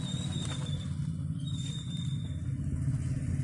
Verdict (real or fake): real